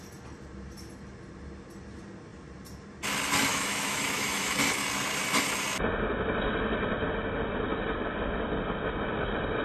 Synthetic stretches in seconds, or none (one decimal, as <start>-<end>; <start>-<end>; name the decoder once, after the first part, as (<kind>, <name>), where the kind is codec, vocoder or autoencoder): 3.5-4.5 (autoencoder, DAC-VAE)